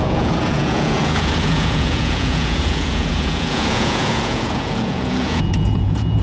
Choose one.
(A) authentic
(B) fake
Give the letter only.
B